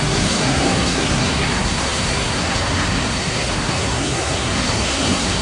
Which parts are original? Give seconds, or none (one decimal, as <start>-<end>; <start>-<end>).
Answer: none